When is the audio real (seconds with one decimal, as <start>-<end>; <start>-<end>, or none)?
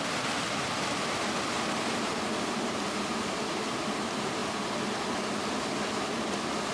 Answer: 0.0-6.7